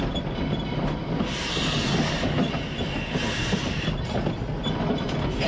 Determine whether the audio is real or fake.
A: real